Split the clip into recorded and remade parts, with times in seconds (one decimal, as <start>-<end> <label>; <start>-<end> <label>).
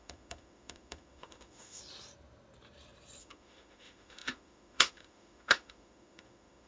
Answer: 0.0-1.8 remade; 1.8-3.2 recorded; 3.2-6.7 remade